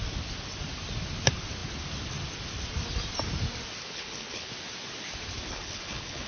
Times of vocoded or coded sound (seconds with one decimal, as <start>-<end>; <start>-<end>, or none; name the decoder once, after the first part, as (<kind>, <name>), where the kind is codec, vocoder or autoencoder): 3.8-4.5 (codec, HILCodec); 5.5-6.3